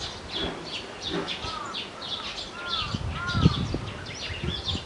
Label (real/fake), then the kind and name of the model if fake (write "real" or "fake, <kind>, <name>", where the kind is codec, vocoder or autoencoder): real